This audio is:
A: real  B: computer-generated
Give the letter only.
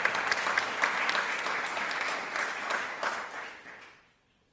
A